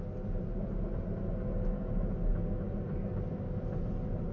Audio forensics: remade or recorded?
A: recorded